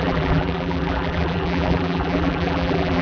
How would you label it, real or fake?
fake